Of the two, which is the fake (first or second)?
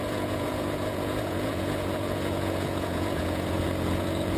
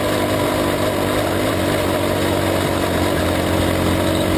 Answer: first